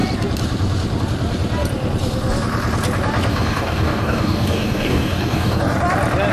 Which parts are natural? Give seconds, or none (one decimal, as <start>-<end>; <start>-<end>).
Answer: 0.0-3.3; 5.6-6.3